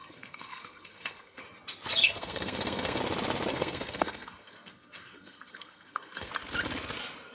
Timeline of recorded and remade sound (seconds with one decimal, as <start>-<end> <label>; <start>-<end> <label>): 0.0-1.4 remade; 1.4-2.0 recorded; 2.0-3.0 remade; 3.0-3.5 recorded; 3.5-6.3 remade; 6.3-7.3 recorded